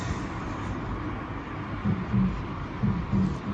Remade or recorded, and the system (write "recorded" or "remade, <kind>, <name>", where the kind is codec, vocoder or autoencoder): remade, vocoder, BigVGAN v2